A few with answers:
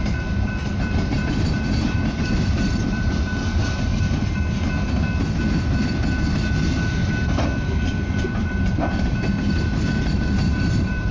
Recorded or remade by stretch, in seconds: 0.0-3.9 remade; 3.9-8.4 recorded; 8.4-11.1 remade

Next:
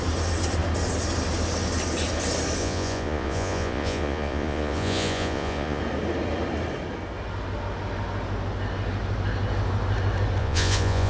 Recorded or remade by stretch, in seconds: 0.0-2.6 recorded; 2.6-5.8 remade; 5.8-10.4 recorded; 10.4-11.1 remade

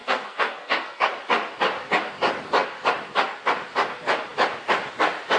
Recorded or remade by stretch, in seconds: 0.0-1.1 remade; 1.1-5.4 recorded

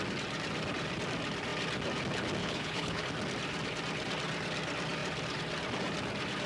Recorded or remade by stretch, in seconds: 0.0-2.4 recorded; 2.4-3.0 remade; 3.0-6.5 recorded

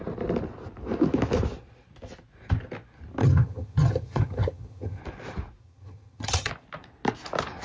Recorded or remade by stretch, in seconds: 0.0-3.2 recorded; 3.2-5.0 remade; 5.0-5.6 recorded; 5.6-6.5 remade; 6.5-7.6 recorded